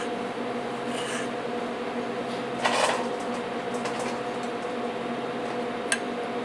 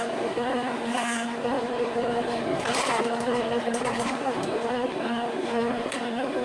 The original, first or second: first